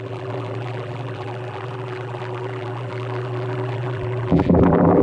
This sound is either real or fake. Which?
fake